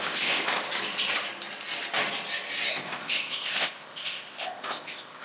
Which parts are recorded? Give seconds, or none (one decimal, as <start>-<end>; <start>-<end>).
0.6-2.7